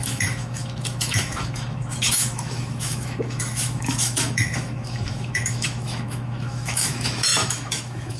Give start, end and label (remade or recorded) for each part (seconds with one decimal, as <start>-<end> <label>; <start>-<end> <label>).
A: 0.0-8.2 remade